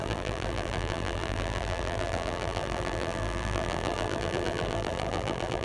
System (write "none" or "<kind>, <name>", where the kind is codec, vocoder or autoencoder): vocoder, BigVGAN v2